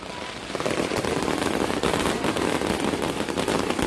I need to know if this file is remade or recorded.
remade